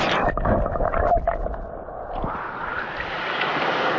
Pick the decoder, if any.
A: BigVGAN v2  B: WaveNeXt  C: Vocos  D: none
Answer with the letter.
D